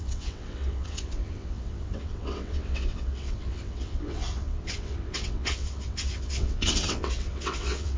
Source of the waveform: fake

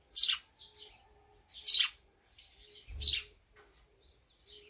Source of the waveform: real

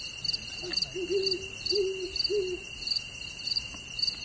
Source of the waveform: real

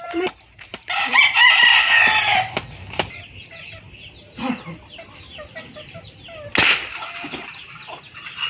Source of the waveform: real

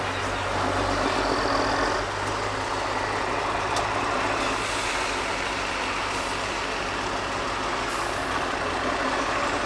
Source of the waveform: real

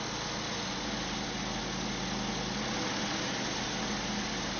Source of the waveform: real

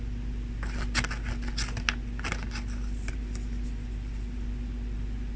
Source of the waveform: real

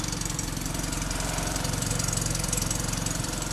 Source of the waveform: fake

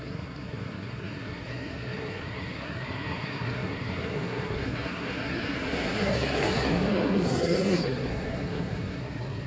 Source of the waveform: fake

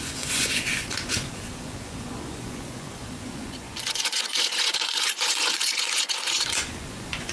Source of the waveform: fake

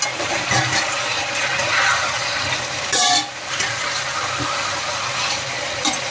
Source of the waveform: real